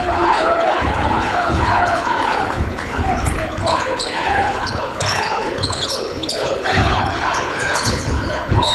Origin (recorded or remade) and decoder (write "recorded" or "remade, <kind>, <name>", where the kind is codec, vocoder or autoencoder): remade, codec, HILCodec